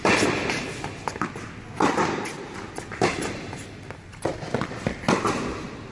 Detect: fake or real real